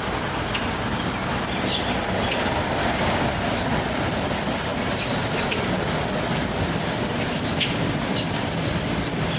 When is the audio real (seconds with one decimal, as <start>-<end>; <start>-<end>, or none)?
0.0-2.8; 3.3-9.4